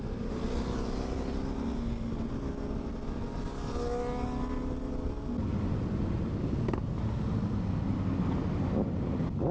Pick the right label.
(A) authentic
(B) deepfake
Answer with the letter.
A